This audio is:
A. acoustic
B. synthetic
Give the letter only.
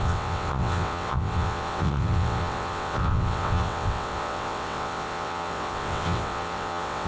B